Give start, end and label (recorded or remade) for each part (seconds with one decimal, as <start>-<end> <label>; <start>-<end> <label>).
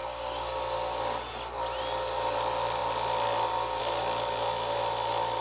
0.0-0.6 remade; 0.6-5.4 recorded